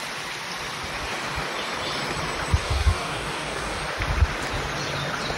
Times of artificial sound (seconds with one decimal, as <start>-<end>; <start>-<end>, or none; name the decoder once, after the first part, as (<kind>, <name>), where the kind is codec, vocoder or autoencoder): 2.6-3.8 (codec, DAC)